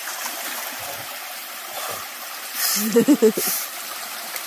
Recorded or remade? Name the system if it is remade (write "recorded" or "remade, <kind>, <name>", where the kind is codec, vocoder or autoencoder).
remade, vocoder, BigVGAN v2